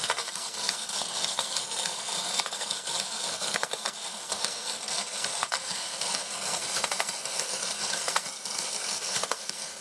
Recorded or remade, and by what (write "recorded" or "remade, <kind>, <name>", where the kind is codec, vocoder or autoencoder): remade, codec, SNAC